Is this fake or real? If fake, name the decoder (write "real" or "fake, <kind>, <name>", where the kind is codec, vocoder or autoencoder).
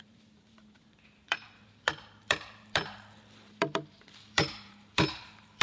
fake, vocoder, BigVGAN v2